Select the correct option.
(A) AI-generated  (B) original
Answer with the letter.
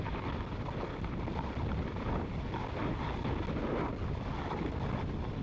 B